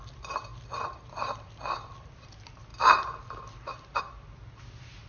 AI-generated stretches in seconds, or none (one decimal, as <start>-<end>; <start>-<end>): none